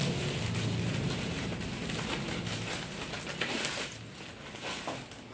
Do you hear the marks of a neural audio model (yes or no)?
no